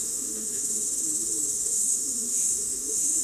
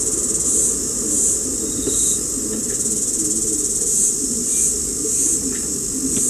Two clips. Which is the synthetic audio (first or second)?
first